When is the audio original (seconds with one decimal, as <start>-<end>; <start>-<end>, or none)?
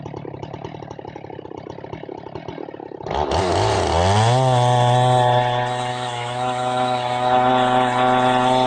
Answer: 0.0-5.9; 7.5-8.7